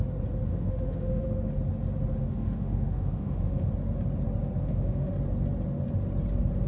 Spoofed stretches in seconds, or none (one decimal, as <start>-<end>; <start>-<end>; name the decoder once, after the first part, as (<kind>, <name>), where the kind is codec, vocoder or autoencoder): 0.5-1.5 (autoencoder, DAC-VAE); 2.2-3.7; 4.6-5.1